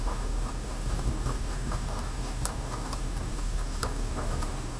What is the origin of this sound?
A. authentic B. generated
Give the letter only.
B